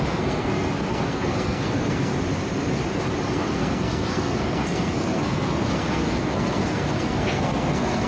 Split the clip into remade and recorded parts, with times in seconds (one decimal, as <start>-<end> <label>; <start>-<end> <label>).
0.0-2.1 remade; 2.1-3.3 recorded; 3.3-8.1 remade